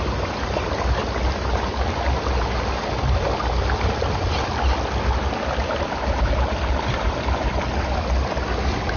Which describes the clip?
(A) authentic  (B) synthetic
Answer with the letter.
A